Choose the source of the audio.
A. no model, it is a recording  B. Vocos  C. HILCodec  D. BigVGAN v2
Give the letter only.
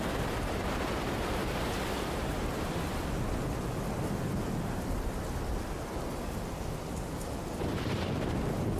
A